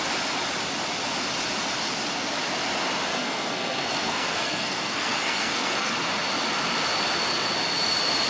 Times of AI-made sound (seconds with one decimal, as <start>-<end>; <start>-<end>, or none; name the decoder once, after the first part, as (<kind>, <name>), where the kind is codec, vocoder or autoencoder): 3.1-5.9 (codec, SNAC)